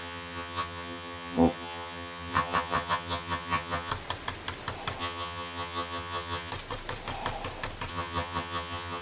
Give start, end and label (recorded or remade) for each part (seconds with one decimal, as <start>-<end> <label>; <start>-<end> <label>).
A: 0.0-3.9 remade; 3.9-5.0 recorded; 5.0-6.5 remade; 6.5-7.9 recorded; 7.9-9.0 remade